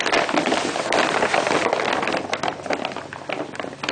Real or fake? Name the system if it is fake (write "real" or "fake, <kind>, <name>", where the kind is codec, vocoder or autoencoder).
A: real